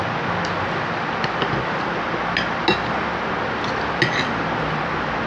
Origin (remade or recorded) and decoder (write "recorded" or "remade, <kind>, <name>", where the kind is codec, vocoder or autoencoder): recorded